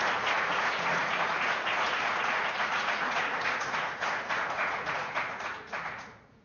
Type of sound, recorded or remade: remade